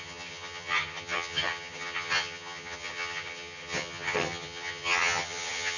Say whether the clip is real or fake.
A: fake